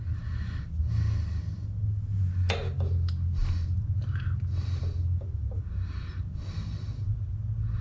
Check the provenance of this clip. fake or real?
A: real